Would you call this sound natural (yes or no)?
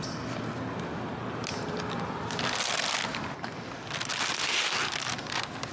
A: yes